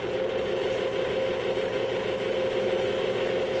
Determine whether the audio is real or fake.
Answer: real